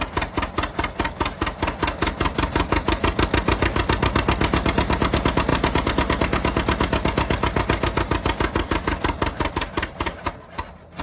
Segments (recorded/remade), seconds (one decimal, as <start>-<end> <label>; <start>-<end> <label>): 0.0-11.0 recorded